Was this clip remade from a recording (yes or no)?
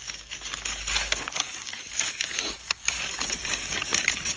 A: yes